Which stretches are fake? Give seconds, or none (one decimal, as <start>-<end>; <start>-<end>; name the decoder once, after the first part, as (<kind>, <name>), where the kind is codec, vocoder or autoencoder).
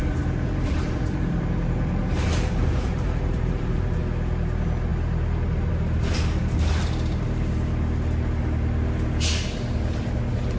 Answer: 0.0-4.0 (vocoder, BigVGAN v2)